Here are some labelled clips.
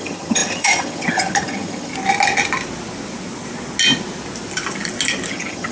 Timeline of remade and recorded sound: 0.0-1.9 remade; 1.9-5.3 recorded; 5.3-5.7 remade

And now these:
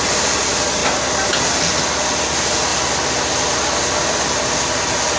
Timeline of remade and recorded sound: 0.0-5.2 recorded

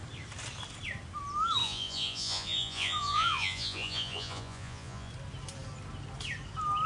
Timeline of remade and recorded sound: 0.0-1.6 recorded; 1.6-5.1 remade; 5.1-6.9 recorded

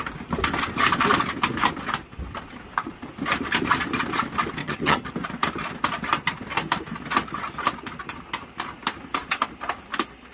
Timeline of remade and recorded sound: 0.0-4.6 recorded; 4.6-5.1 remade; 5.1-10.3 recorded

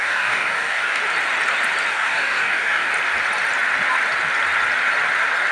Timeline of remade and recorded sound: 0.0-1.0 remade; 1.0-1.9 recorded; 1.9-2.9 remade; 2.9-5.5 recorded

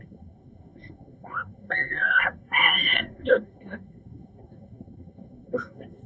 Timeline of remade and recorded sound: 0.0-6.1 remade

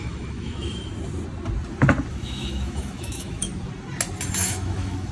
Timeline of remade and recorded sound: 0.0-0.9 remade; 0.9-2.1 recorded; 2.1-3.5 remade; 3.5-4.3 recorded; 4.3-5.1 remade

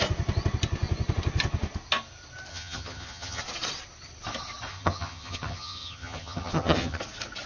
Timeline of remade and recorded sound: 0.0-2.5 recorded; 2.5-3.4 remade; 3.4-4.7 recorded; 4.7-7.0 remade; 7.0-7.5 recorded